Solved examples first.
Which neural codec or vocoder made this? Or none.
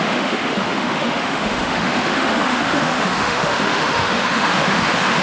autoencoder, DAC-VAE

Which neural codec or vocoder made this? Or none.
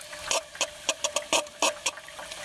none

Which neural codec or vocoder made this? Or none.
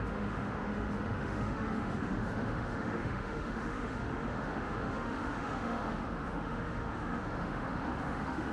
autoencoder, DAC-VAE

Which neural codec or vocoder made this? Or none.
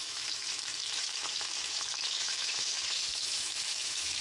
autoencoder, DAC-VAE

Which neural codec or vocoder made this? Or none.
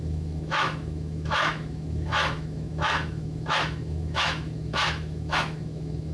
autoencoder, DAC-VAE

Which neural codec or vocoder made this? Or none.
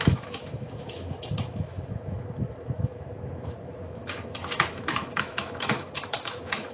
autoencoder, DAC-VAE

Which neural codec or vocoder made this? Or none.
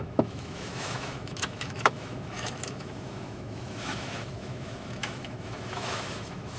autoencoder, DAC-VAE